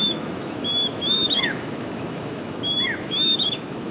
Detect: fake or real fake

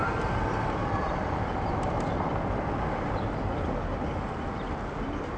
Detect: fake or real real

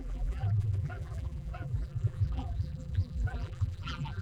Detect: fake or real fake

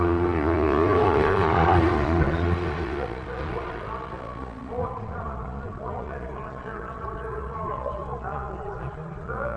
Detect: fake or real fake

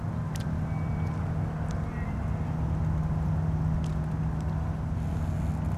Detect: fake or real real